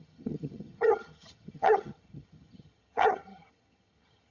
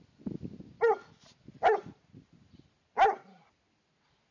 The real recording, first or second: second